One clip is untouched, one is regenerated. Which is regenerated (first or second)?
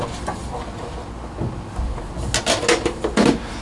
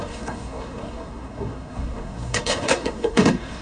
second